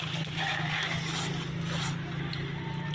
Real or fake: real